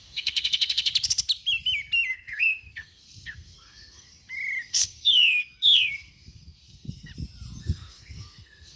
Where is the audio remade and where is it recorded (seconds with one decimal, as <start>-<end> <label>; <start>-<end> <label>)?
0.0-0.9 remade; 0.9-2.1 recorded; 2.1-4.1 remade; 4.1-4.7 recorded; 4.7-7.1 remade; 7.1-7.6 recorded; 7.6-8.8 remade